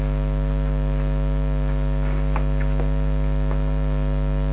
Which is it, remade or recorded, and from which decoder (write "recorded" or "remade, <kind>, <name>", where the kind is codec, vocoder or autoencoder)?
recorded